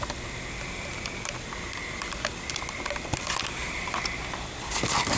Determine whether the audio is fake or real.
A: real